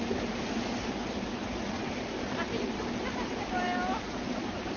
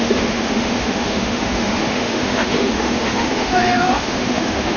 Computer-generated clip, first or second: second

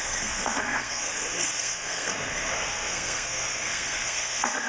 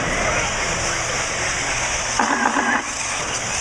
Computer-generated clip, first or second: first